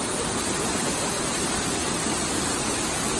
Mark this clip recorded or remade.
recorded